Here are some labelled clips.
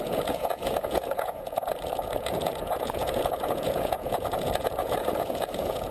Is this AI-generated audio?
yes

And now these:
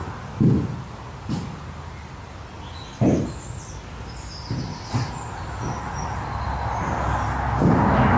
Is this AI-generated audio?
no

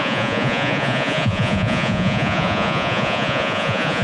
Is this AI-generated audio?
yes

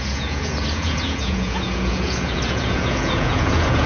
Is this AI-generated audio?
yes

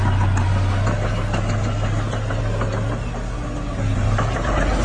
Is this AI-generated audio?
no